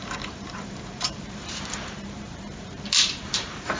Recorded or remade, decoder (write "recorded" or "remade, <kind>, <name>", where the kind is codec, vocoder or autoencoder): remade, vocoder, BigVGAN v2